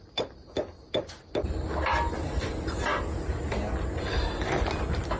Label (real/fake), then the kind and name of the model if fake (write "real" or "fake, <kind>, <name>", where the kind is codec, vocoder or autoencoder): real